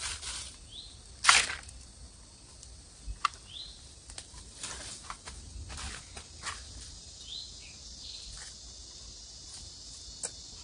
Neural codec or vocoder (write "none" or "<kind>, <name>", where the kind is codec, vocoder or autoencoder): none